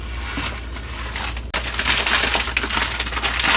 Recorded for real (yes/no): yes